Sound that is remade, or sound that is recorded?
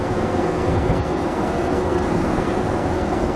remade